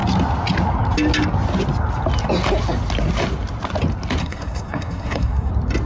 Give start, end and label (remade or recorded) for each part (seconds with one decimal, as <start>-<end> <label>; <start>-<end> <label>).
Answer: 0.0-4.2 recorded; 4.2-5.5 remade; 5.5-5.9 recorded